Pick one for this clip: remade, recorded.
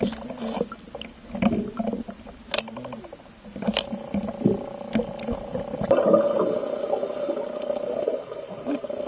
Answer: recorded